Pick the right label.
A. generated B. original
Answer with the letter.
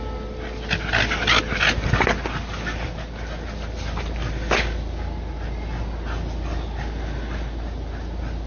B